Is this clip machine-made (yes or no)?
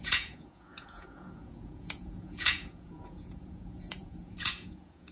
yes